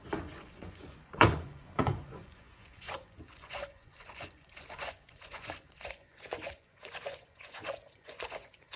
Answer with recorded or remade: remade